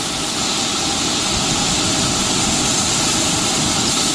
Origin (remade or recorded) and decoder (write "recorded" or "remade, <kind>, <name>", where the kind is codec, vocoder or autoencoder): remade, vocoder, BigVGAN v2